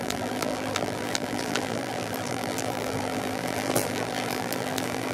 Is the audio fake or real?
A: fake